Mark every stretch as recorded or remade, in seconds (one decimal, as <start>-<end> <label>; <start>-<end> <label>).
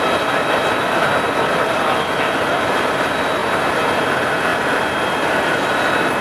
0.0-3.4 recorded; 3.4-4.0 remade; 4.0-6.2 recorded